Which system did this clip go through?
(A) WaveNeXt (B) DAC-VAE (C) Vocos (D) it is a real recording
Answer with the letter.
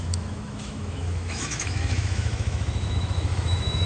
B